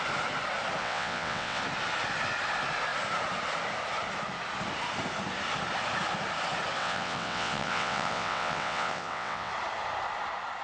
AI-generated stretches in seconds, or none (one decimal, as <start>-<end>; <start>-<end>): 0.8-1.6; 6.8-9.5